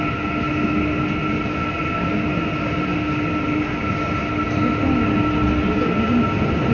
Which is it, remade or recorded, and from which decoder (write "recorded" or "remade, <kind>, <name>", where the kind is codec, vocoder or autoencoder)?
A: recorded